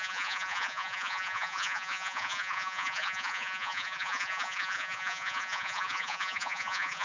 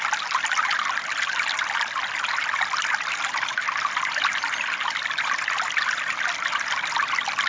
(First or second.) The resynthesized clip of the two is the first